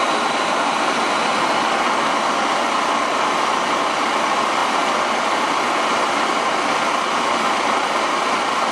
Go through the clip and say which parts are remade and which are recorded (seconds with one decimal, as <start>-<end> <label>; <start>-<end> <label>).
0.0-8.7 recorded